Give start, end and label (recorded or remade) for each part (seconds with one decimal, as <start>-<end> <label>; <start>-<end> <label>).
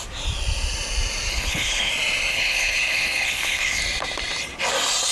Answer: 0.0-1.3 recorded; 1.3-1.9 remade; 1.9-2.3 recorded; 2.3-3.8 remade; 3.8-5.1 recorded